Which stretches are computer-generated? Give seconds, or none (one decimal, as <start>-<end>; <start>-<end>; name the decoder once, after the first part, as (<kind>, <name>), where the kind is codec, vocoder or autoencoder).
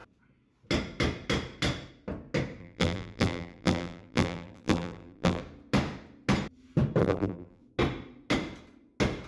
2.6-5.4 (vocoder, BigVGAN v2); 7.0-7.6